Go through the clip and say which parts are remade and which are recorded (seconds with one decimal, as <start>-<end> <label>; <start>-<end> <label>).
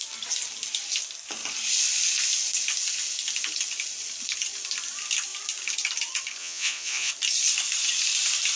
0.0-6.4 recorded; 6.4-7.1 remade; 7.1-8.6 recorded